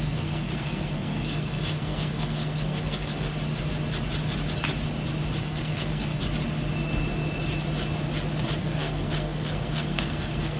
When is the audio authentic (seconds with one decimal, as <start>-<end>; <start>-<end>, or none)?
3.3-5.4; 6.2-8.6